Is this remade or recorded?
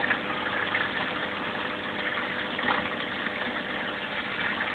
recorded